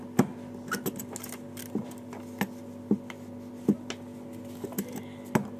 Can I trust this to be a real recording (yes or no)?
yes